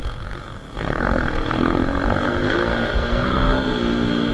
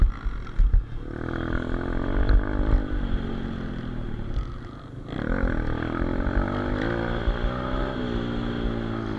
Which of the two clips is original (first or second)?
second